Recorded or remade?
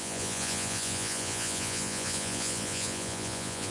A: remade